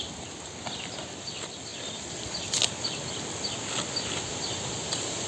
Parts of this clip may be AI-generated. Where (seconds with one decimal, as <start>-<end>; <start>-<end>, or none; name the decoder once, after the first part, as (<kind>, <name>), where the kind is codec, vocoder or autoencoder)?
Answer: none